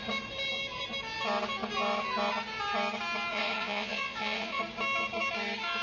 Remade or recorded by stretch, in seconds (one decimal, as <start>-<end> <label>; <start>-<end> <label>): 0.0-3.3 recorded; 3.3-4.6 remade; 4.6-5.8 recorded